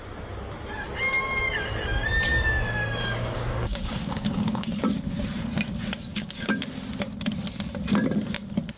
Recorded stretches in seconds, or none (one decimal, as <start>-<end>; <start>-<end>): 0.0-2.3; 4.7-6.1; 6.6-8.8